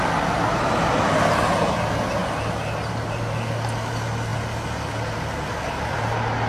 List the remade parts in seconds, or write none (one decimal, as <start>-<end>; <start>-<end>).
none